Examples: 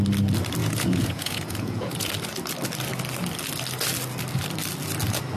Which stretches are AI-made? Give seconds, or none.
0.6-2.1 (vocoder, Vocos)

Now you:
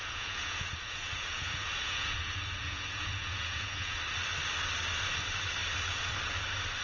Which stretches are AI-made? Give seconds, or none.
0.0-4.0 (vocoder, Vocos)